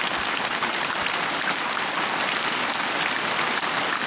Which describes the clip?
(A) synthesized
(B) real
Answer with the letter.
B